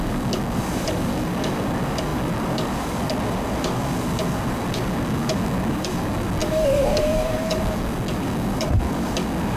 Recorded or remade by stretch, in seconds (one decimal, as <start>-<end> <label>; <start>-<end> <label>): 0.0-9.6 remade